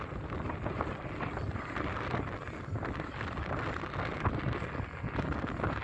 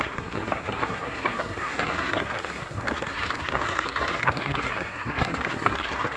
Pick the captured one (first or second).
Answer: first